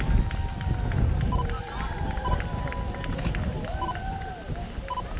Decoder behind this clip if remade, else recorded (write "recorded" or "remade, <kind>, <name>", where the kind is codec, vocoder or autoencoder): recorded